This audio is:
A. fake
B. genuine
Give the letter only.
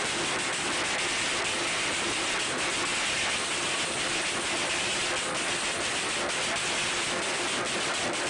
B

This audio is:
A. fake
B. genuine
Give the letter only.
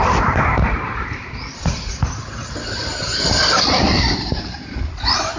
A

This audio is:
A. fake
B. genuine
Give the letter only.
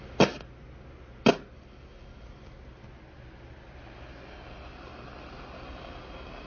B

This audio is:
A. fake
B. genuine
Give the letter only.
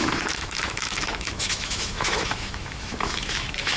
A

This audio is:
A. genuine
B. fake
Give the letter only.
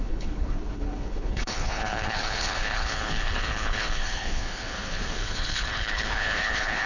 B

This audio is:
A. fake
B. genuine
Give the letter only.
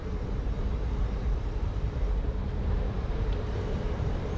A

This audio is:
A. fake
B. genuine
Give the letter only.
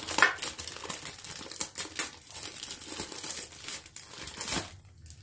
B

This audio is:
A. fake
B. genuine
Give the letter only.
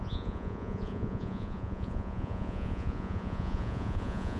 A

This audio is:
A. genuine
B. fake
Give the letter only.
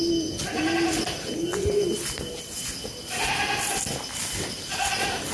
A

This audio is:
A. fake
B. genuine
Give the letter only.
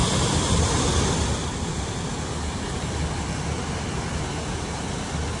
B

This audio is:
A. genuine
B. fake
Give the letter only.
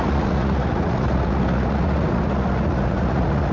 B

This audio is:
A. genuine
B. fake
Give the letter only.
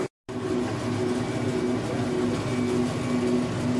A